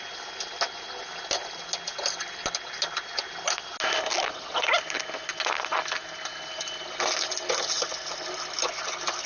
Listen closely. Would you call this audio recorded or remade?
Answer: recorded